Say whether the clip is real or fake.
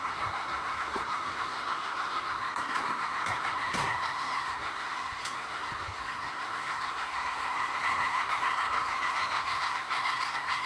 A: fake